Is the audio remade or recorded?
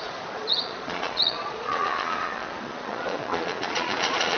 remade